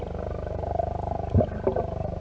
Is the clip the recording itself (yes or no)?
yes